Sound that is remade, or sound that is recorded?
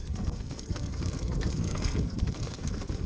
remade